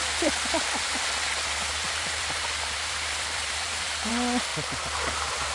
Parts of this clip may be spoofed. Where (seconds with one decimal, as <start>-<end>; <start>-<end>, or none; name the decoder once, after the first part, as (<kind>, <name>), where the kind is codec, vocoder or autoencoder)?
1.7-4.1 (vocoder, BigVGAN v2)